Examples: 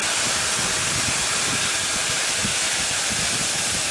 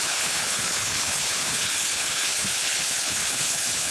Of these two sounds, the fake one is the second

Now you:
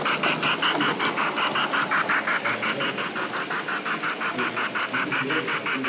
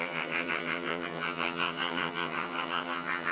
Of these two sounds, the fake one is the second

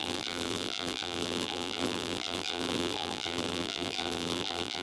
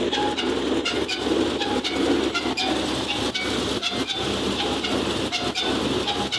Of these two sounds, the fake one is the first